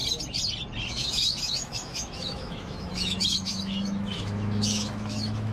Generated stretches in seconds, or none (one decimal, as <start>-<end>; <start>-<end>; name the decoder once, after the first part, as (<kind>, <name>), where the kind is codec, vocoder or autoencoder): 0.9-5.5 (autoencoder, DAC-VAE)